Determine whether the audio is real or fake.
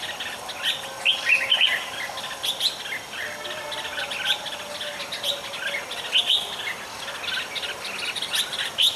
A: real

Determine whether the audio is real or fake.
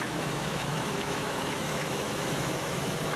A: fake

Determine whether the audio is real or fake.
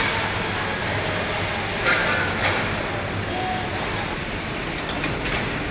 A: real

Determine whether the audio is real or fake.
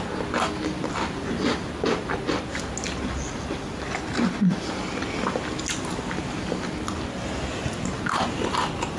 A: real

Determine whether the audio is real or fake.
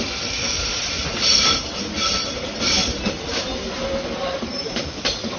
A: real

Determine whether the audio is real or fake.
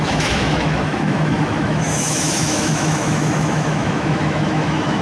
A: fake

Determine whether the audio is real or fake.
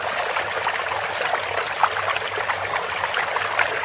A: real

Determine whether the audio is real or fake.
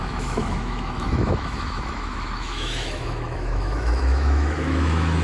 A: fake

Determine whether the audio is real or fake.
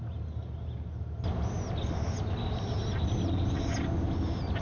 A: real